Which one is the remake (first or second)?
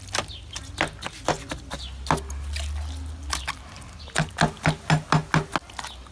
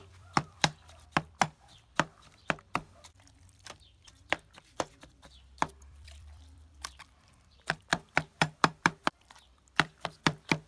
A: second